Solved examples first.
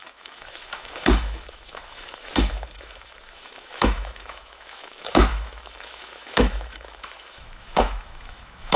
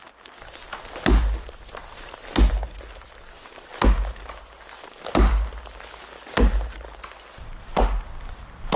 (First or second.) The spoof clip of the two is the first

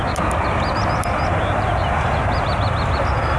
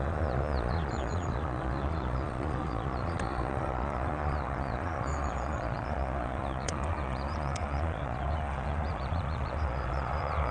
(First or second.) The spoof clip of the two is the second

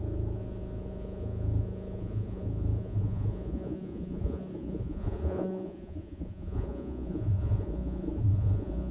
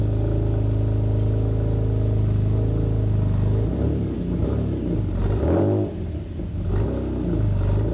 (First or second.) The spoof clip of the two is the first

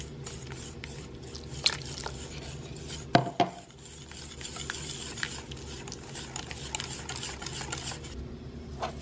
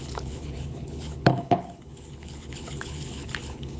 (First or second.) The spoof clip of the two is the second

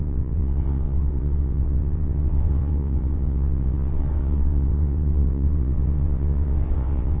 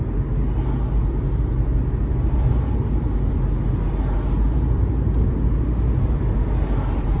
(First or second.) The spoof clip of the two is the first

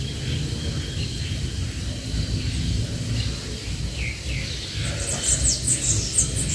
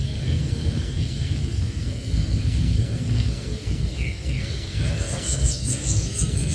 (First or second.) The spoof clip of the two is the second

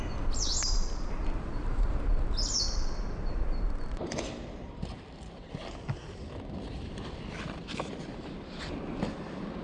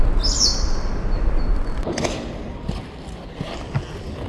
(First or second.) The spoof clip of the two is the first